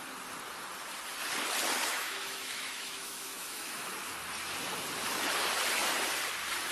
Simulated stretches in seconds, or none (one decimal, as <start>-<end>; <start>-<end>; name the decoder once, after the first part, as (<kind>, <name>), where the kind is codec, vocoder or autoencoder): 1.9-3.9 (autoencoder, DAC-VAE)